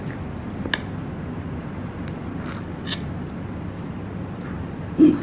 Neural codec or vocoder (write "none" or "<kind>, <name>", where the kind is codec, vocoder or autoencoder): none